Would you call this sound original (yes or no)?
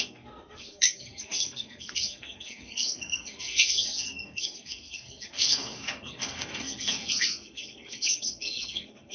no